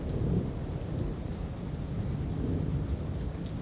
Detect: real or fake real